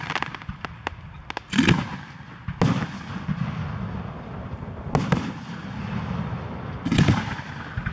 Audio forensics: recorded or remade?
recorded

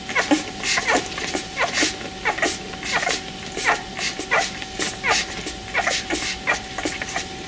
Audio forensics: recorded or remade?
recorded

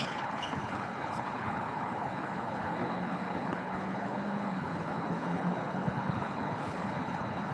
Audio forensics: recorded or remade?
remade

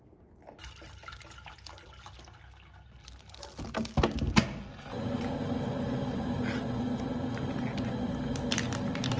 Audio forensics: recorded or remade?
recorded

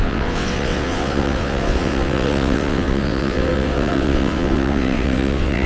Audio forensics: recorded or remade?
remade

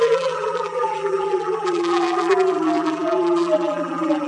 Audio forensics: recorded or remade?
remade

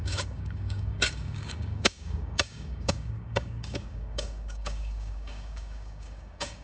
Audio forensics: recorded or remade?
remade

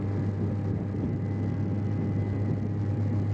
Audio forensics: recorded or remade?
recorded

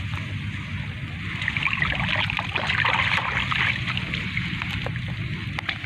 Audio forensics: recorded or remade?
recorded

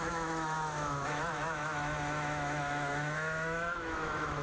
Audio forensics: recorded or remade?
remade